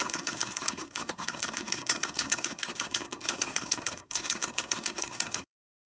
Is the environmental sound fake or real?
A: fake